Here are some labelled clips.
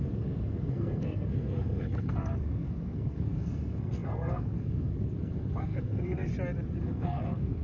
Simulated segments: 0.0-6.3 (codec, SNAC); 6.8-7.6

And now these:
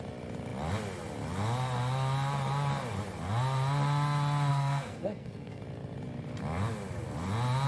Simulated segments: 4.5-5.6 (codec, SNAC)

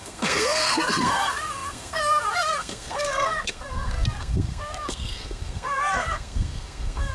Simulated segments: 0.0-7.1 (codec, SNAC)

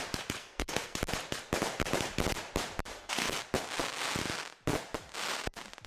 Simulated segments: 0.4-1.0 (codec, SNAC); 2.9-3.4

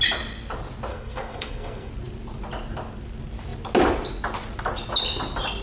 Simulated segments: 0.9-1.9 (codec, SNAC)

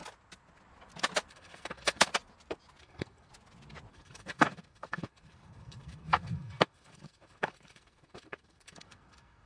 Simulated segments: 1.3-2.1 (codec, SNAC); 2.8-3.3; 3.9-9.5